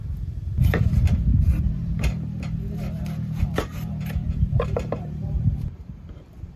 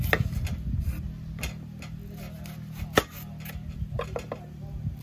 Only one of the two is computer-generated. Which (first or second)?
first